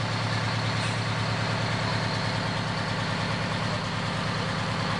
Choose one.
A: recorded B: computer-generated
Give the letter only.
A